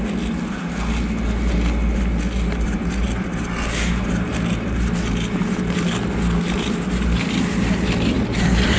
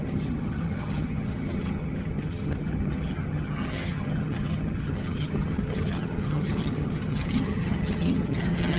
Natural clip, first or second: first